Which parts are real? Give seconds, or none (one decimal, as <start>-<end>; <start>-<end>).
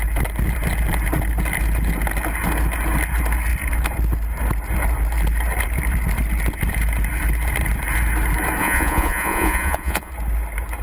0.0-8.6; 10.1-10.8